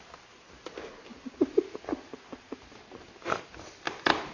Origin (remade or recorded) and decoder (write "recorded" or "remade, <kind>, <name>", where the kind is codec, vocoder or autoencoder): recorded